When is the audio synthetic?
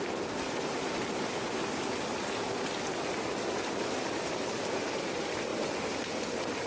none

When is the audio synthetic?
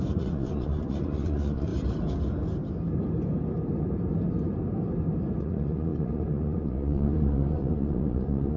0.0-1.7 (vocoder, Vocos); 5.4-8.6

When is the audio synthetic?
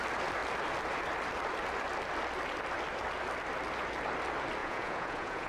4.6-5.5 (vocoder, Vocos)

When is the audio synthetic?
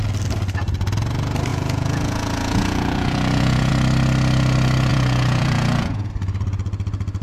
1.5-3.7 (vocoder, Vocos); 4.9-6.1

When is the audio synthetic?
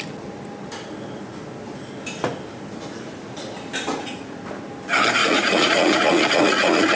3.9-4.4 (vocoder, Vocos); 5.2-7.0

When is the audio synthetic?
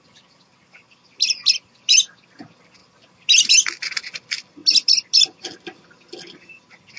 none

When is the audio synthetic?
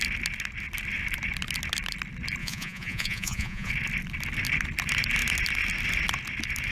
2.4-3.7 (vocoder, Vocos)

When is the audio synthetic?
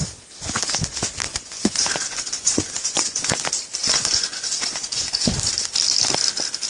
1.3-3.4 (vocoder, Vocos); 3.8-5.3